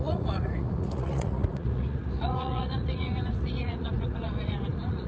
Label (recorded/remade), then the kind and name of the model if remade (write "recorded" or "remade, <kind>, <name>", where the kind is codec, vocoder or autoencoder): remade, vocoder, Vocos